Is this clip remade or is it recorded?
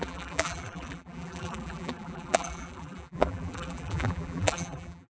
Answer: remade